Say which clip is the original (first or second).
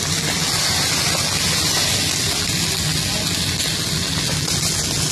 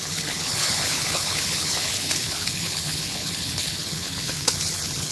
first